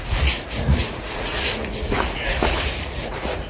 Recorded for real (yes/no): no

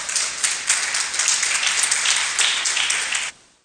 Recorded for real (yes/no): yes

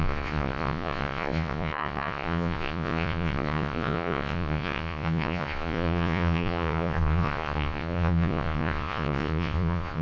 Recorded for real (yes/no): no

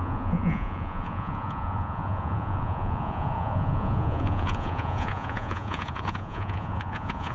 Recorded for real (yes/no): no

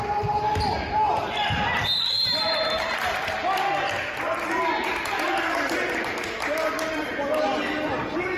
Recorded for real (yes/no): yes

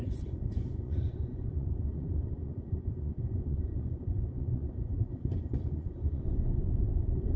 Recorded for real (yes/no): no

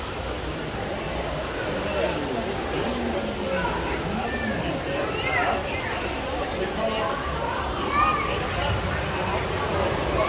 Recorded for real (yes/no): yes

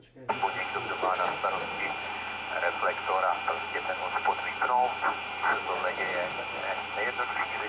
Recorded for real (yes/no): yes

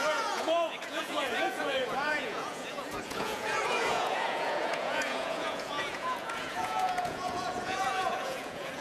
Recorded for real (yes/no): no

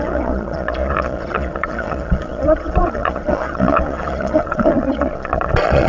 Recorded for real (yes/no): no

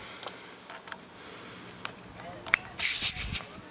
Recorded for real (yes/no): yes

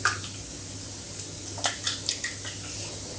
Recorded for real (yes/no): yes